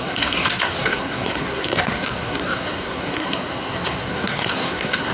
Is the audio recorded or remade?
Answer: remade